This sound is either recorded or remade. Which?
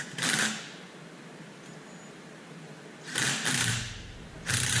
recorded